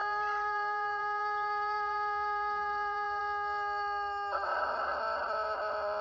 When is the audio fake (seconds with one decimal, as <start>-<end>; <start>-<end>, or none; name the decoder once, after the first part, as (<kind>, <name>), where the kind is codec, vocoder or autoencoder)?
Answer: 0.0-3.2 (vocoder, BigVGAN v2)